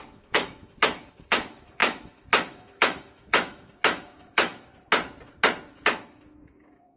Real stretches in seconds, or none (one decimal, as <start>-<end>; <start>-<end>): 4.7-5.7